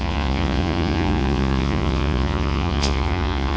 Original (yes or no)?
no